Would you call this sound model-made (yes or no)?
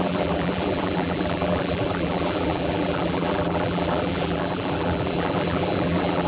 yes